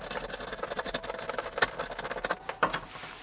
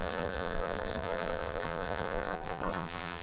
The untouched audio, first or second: first